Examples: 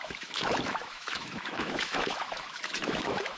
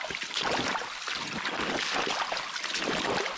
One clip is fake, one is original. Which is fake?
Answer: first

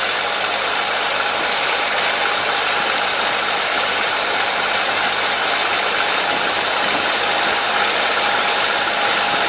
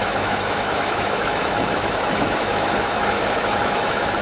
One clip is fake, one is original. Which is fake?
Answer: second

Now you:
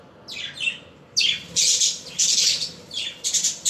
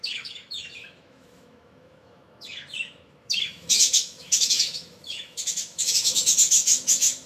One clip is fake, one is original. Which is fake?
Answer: second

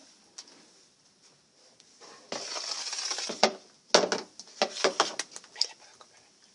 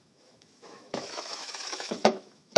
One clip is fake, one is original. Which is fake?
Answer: second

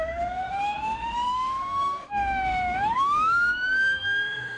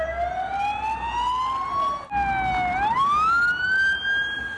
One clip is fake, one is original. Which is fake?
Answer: first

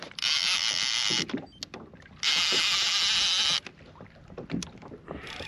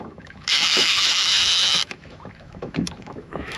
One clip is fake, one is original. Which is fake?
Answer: second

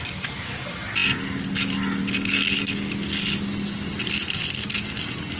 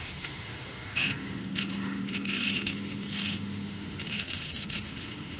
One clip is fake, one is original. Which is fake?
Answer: second